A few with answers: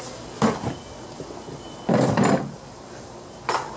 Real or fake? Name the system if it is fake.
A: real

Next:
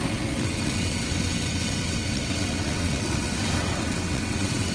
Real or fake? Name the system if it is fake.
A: fake, vocoder, WaveNeXt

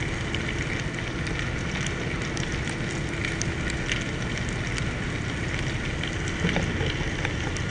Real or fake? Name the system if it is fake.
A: real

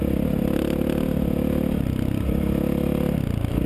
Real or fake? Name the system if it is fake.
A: real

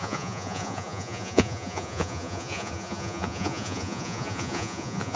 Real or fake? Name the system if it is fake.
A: fake, vocoder, Vocos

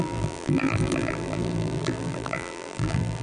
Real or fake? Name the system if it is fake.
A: fake, vocoder, BigVGAN v2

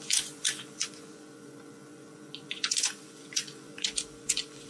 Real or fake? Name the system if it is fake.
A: fake, vocoder, Vocos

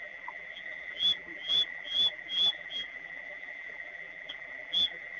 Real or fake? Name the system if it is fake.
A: fake, vocoder, BigVGAN v2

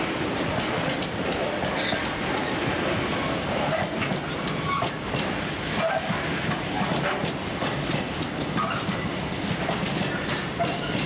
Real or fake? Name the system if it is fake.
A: real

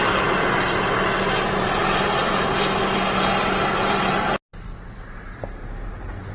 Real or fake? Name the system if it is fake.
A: real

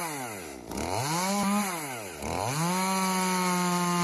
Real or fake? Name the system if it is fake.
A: real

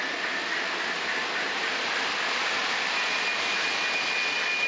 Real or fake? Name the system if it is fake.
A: real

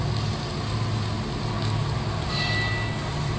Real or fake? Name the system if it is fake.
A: real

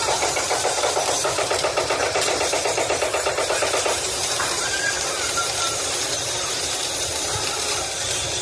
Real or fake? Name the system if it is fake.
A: fake, vocoder, BigVGAN v2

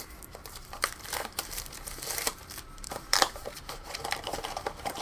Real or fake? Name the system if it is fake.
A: fake, vocoder, BigVGAN v2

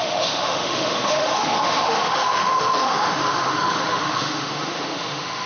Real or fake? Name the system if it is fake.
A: fake, autoencoder, DAC-VAE